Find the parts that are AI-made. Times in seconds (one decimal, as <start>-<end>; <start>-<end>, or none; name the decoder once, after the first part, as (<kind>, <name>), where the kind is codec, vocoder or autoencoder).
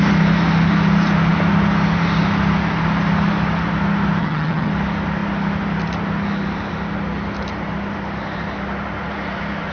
4.2-4.7 (vocoder, HiFi-GAN)